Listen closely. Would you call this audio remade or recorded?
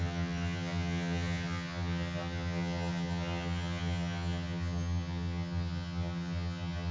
remade